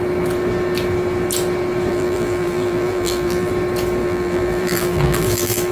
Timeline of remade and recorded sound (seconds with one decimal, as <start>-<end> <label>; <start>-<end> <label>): 0.0-1.9 recorded; 1.9-3.5 remade; 3.5-4.0 recorded; 4.0-5.7 remade